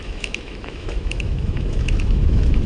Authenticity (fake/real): fake